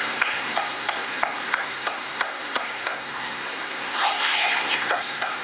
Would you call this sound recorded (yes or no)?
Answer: no